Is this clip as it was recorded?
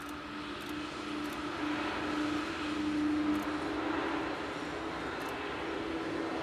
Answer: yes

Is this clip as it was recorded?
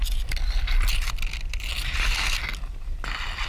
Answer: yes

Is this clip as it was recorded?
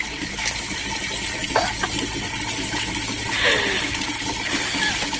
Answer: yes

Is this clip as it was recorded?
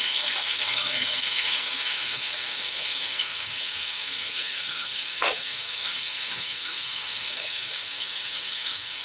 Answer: no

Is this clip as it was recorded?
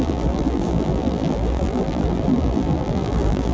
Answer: no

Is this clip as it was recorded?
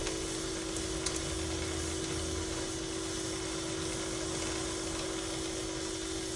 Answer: yes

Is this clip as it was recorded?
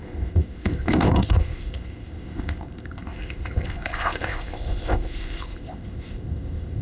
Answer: no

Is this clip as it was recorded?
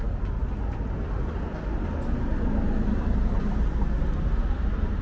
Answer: yes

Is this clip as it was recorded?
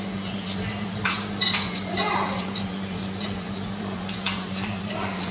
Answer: no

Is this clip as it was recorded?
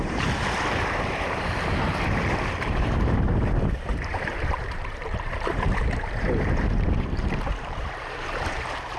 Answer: no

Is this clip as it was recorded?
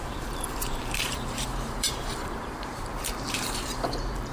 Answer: no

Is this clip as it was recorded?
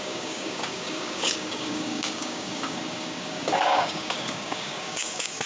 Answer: no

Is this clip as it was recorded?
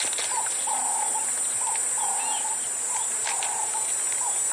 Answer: yes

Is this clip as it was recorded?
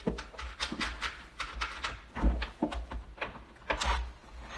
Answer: yes